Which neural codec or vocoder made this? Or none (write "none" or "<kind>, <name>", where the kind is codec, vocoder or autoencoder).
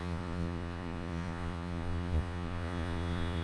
vocoder, Vocos